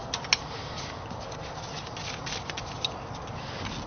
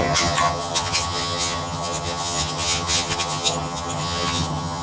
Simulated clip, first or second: second